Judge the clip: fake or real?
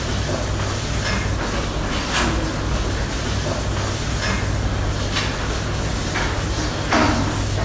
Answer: real